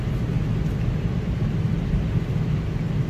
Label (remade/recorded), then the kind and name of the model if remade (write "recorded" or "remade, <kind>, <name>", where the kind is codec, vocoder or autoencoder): recorded